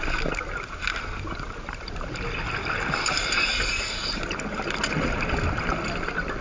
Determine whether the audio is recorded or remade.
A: recorded